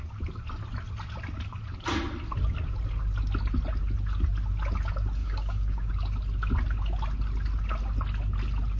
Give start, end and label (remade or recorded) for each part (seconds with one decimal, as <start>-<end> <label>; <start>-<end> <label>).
0.0-5.2 recorded; 5.2-5.9 remade; 5.9-8.8 recorded